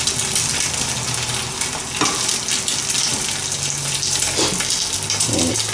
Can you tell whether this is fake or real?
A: real